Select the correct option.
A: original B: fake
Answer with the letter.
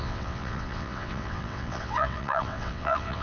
B